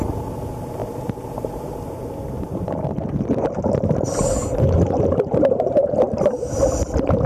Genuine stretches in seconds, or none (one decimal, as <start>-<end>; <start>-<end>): 0.0-0.8; 2.0-7.3